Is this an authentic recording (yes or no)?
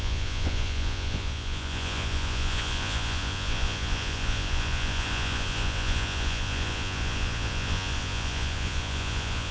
no